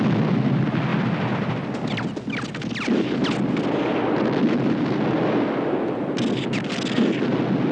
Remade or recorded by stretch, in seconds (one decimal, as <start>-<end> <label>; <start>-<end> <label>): 0.0-7.7 recorded